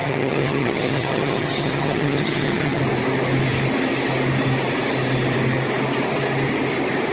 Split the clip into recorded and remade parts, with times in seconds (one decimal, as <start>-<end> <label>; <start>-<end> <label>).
0.0-2.8 remade; 2.8-7.1 recorded